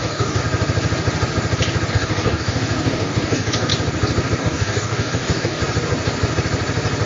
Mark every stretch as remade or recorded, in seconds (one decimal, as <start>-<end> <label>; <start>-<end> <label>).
0.0-0.4 remade; 0.4-1.9 recorded; 1.9-3.7 remade; 3.7-4.4 recorded; 4.4-5.6 remade; 5.6-7.1 recorded